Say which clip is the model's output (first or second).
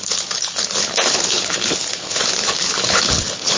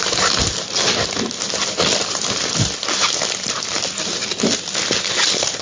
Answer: first